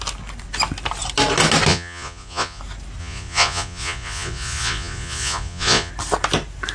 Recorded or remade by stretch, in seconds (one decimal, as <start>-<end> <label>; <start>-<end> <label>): 0.0-1.7 recorded; 1.7-2.6 remade; 2.6-3.0 recorded; 3.0-5.9 remade; 5.9-6.7 recorded